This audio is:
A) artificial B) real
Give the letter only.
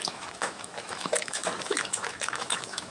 A